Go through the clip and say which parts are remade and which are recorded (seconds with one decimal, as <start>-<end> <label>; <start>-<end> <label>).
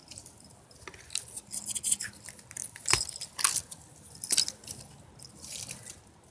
0.0-6.3 recorded